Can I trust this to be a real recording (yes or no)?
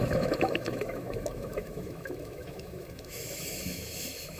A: no